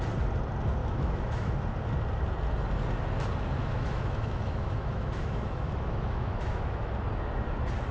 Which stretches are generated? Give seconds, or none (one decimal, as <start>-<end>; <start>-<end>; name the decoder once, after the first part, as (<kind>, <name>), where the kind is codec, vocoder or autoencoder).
0.8-1.5 (autoencoder, DAC-VAE); 3.6-6.9